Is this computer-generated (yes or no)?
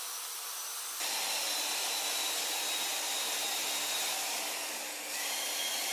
no